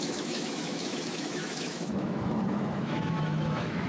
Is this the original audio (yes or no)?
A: no